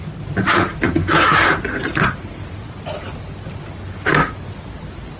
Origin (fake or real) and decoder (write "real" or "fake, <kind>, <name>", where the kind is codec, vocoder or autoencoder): real